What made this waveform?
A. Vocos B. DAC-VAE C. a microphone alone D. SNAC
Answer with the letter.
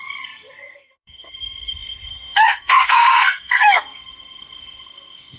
D